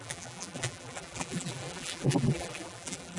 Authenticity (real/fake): fake